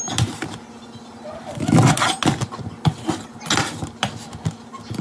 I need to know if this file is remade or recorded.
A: recorded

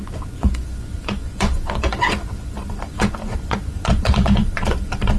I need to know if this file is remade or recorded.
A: remade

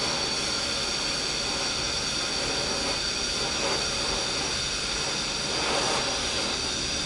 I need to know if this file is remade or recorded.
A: recorded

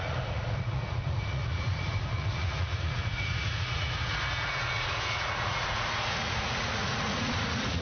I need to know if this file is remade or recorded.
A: remade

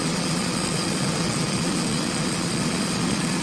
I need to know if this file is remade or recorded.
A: remade